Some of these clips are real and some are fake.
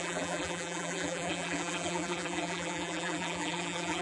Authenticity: fake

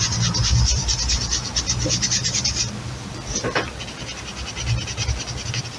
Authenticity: real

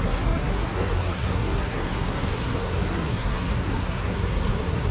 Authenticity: fake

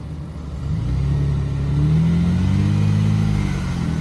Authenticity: real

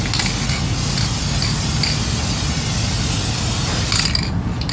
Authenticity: real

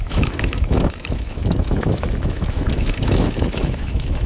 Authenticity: fake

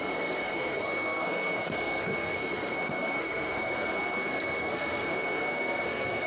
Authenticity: fake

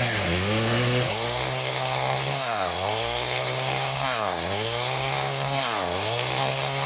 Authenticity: fake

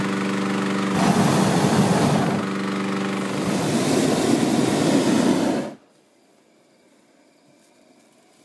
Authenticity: real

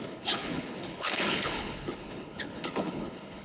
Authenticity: fake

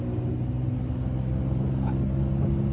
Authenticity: real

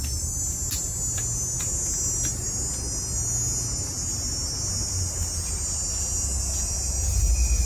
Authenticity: real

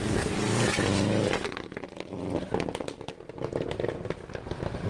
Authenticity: real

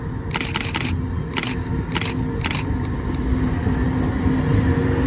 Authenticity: real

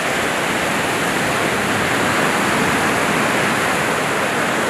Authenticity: real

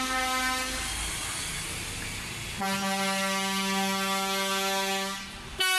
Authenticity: real